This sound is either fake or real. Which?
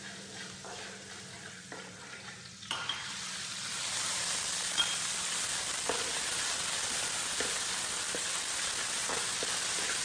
real